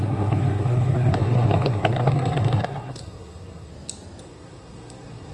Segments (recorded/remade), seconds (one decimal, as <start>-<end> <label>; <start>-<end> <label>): 0.0-3.7 remade; 3.7-4.2 recorded; 4.2-5.3 remade